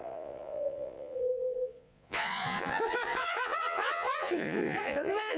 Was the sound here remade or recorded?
remade